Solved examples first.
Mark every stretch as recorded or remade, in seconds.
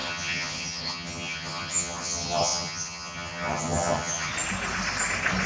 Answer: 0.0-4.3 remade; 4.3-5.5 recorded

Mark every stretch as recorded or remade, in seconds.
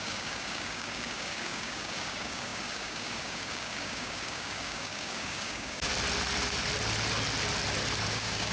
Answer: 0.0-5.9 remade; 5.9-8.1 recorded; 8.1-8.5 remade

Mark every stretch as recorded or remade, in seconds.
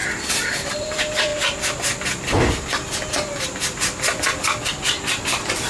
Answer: 0.0-0.7 recorded; 0.7-1.3 remade; 1.3-4.7 recorded; 4.7-5.7 remade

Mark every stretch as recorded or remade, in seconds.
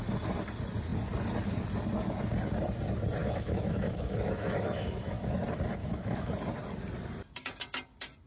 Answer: 0.0-3.2 recorded; 3.2-5.3 remade; 5.3-5.8 recorded; 5.8-6.3 remade; 6.3-8.3 recorded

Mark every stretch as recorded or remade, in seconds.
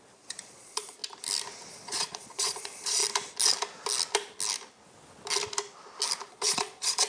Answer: 0.0-1.0 remade; 1.0-1.7 recorded; 1.7-3.0 remade; 3.0-6.3 recorded; 6.3-7.1 remade